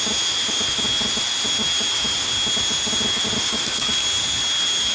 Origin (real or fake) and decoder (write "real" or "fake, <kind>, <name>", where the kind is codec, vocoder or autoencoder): real